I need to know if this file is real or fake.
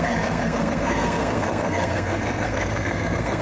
fake